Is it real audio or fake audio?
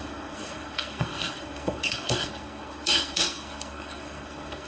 fake